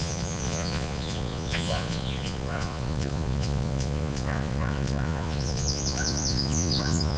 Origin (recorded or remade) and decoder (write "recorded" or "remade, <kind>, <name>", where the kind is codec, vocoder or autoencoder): remade, vocoder, Vocos